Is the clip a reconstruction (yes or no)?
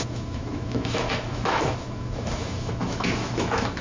yes